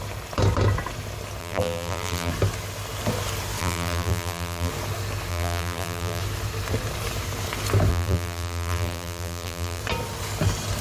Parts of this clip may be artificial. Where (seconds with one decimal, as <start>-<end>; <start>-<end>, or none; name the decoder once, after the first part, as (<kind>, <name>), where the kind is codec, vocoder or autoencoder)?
1.4-2.3 (vocoder, BigVGAN v2); 3.6-4.7; 5.3-6.2; 7.9-9.8